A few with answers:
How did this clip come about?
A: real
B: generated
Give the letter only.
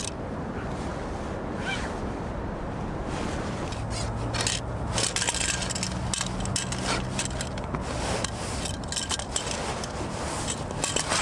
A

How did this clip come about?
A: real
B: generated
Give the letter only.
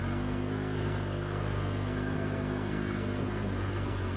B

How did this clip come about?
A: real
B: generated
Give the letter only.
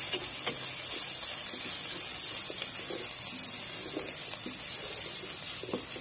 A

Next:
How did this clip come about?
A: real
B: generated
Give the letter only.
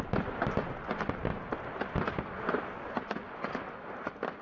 A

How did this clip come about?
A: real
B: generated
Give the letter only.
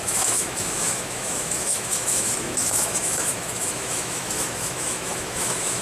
B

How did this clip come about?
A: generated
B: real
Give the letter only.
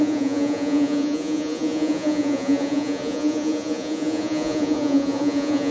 A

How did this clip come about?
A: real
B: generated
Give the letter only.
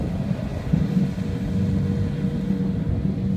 A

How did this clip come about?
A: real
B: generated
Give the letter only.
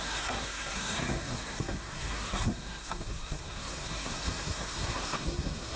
B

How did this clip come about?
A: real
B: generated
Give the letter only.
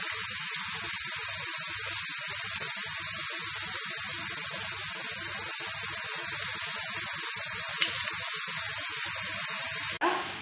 A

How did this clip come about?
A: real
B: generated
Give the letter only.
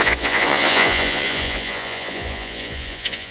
B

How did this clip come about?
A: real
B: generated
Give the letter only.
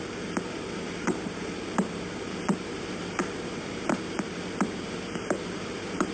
B